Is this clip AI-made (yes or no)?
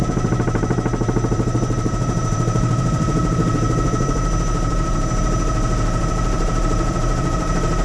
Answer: yes